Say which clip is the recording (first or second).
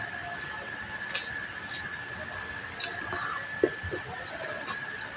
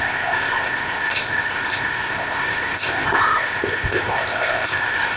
first